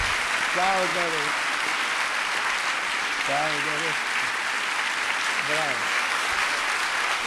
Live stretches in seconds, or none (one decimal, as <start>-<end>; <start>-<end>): 0.0-5.8; 6.4-7.3